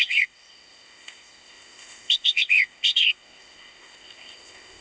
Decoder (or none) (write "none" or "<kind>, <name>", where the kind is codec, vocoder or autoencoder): codec, ZipCodec